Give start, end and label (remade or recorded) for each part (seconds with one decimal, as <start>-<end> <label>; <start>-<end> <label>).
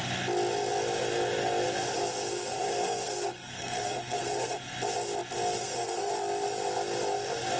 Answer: 0.0-2.3 recorded; 2.3-4.6 remade; 4.6-5.6 recorded; 5.6-6.1 remade; 6.1-7.6 recorded